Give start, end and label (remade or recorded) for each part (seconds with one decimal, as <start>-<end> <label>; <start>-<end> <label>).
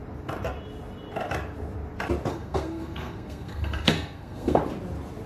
0.0-2.3 recorded; 2.3-4.6 remade; 4.6-5.3 recorded